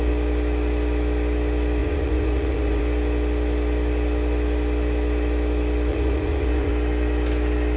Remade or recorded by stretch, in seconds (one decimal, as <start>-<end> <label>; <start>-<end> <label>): 0.0-1.8 recorded; 1.8-2.8 remade; 2.8-5.9 recorded; 5.9-6.7 remade; 6.7-7.8 recorded